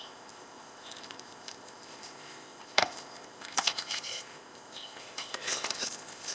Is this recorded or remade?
remade